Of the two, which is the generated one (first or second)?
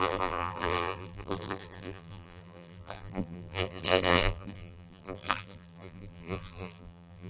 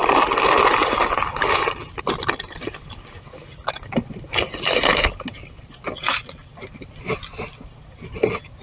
first